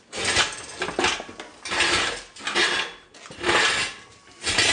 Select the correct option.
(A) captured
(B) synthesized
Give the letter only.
A